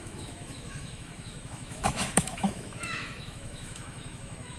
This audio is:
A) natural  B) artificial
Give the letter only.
B